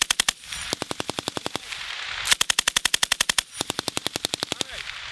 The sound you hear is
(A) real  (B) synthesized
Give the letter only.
A